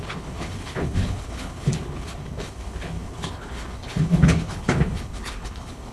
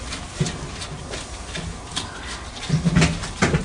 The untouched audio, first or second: second